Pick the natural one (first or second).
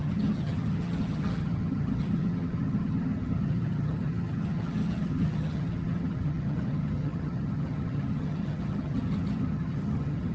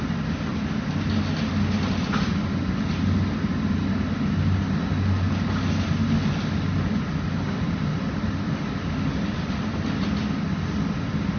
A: second